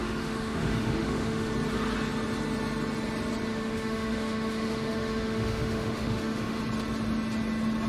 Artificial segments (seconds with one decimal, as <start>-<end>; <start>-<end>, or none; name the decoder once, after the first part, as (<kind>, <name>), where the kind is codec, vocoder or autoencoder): 0.0-1.5 (autoencoder, DAC-VAE); 3.5-6.6